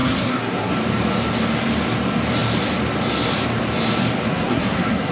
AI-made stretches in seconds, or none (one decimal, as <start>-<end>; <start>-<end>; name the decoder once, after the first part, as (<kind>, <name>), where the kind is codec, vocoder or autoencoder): 0.0-0.7 (codec, SNAC); 4.3-5.1